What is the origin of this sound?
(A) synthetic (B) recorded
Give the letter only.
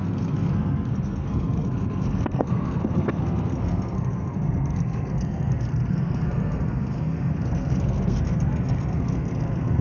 A